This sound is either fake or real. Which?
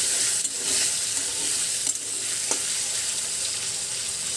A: real